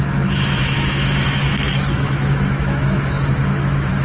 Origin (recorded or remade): remade